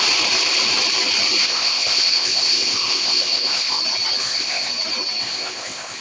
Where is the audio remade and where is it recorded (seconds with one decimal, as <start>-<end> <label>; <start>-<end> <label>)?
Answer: 0.0-1.4 recorded; 1.4-3.8 remade; 3.8-4.2 recorded; 4.2-4.7 remade; 4.7-5.2 recorded; 5.2-6.0 remade

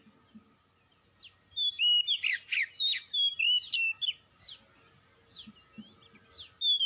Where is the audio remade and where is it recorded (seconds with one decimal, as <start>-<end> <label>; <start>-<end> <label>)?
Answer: 0.0-6.9 recorded

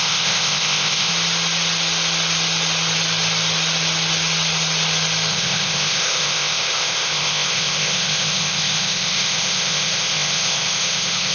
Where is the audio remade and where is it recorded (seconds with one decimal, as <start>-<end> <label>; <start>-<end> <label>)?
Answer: 0.0-1.1 remade; 1.1-5.3 recorded; 5.3-11.3 remade

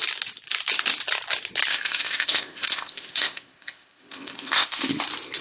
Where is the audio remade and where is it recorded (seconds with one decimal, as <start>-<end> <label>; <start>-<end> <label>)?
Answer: 0.0-1.7 recorded; 1.7-4.9 remade; 4.9-5.4 recorded